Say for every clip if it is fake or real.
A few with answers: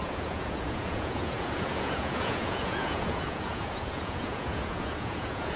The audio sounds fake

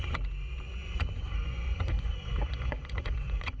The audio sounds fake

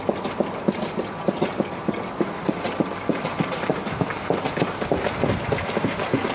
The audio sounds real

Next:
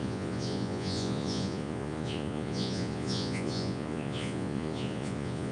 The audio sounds fake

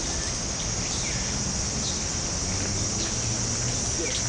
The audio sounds real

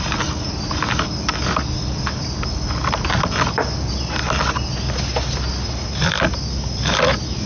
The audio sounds real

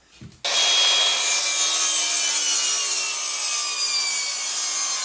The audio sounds real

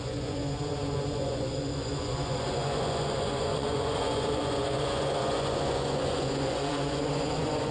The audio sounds fake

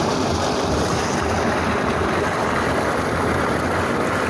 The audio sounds real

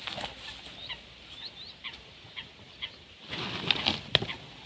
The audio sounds real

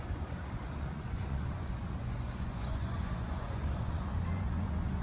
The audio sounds fake